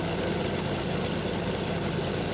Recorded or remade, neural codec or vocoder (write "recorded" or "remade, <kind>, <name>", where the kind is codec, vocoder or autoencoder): recorded